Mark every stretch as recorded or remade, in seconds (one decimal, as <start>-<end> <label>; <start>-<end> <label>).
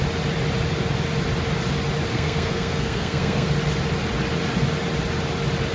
0.0-2.1 recorded; 2.1-3.5 remade; 3.5-5.7 recorded